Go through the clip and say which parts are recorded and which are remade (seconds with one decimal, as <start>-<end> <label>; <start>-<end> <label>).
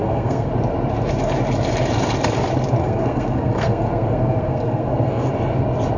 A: 0.0-0.5 remade; 0.5-2.8 recorded; 2.8-5.3 remade; 5.3-6.0 recorded